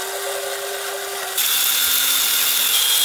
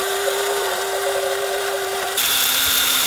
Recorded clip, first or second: first